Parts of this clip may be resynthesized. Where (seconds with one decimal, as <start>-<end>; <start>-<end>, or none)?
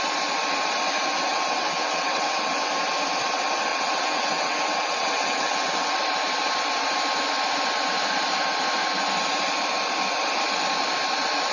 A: 1.3-2.7; 3.7-5.9